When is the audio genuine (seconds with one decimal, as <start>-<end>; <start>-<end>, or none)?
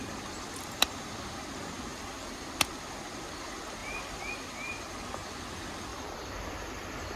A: 0.0-1.9; 2.5-3.8; 4.3-5.9